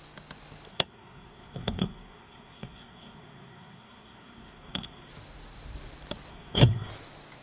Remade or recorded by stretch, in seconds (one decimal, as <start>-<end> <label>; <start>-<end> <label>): 0.0-0.7 recorded; 0.7-5.1 remade; 5.1-6.3 recorded; 6.3-6.9 remade; 6.9-7.4 recorded